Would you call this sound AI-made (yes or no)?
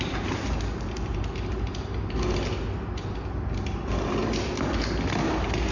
no